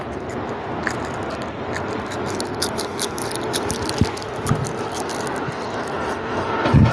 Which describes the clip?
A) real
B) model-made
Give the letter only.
B